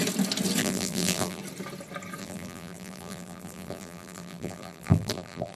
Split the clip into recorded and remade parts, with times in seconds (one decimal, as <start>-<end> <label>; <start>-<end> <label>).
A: 0.0-0.6 recorded; 0.6-1.4 remade; 1.4-2.2 recorded; 2.2-5.6 remade